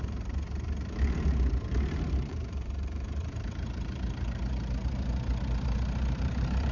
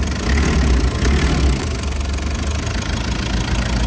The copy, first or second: first